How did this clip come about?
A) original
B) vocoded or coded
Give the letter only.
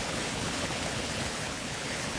B